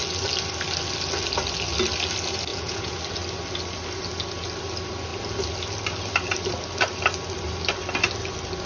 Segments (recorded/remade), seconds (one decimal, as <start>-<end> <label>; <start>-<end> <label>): 0.0-2.5 recorded; 2.5-3.0 remade; 3.0-8.7 recorded